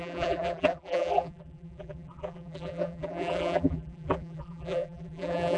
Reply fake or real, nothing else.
fake